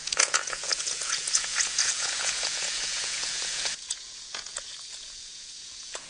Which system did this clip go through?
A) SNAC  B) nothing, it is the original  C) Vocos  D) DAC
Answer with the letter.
C